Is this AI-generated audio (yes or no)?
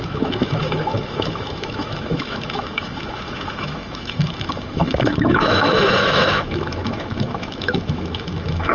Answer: yes